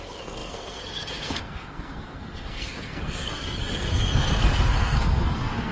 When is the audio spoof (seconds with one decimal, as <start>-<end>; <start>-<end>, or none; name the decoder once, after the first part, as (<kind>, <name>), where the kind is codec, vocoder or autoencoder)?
0.0-5.7 (codec, SNAC)